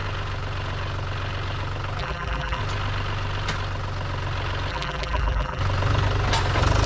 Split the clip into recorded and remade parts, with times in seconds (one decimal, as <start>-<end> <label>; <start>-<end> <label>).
0.0-2.0 recorded; 2.0-2.6 remade; 2.6-4.7 recorded; 4.7-5.6 remade; 5.6-6.9 recorded